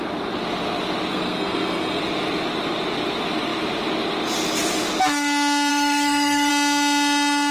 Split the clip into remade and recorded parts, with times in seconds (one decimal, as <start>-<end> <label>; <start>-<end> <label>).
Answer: 0.0-1.1 recorded; 1.1-2.0 remade; 2.0-5.7 recorded; 5.7-6.5 remade; 6.5-7.5 recorded